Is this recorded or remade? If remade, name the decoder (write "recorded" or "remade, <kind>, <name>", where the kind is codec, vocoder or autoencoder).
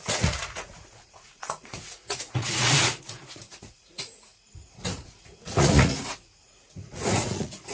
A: remade, vocoder, Vocos